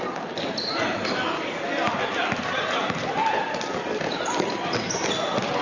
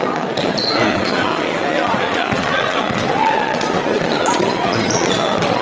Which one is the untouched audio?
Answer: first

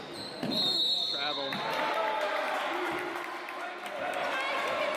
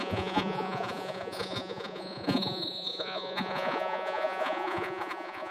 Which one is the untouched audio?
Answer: first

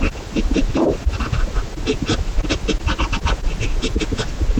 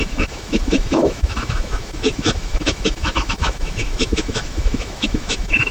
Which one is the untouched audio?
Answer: first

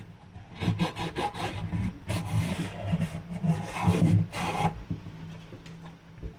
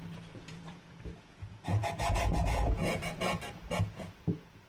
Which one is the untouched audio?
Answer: first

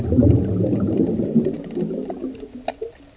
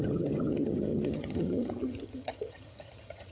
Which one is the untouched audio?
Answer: first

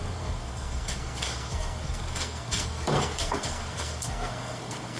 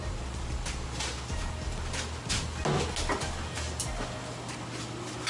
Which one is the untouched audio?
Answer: second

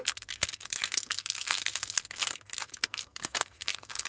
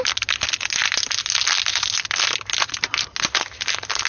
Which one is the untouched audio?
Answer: second